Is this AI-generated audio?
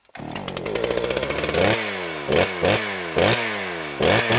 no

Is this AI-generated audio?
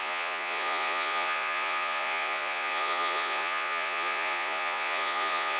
yes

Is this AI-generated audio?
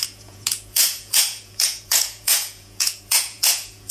yes